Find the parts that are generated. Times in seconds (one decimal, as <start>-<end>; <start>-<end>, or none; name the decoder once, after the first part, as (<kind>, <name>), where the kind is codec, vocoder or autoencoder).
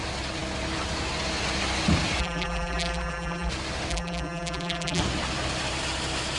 2.2-3.5 (vocoder, BigVGAN v2); 3.9-5.0